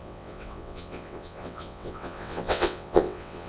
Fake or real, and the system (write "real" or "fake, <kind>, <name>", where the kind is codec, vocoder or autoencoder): fake, vocoder, WaveNeXt